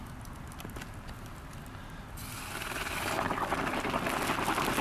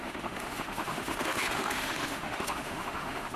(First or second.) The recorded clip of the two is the first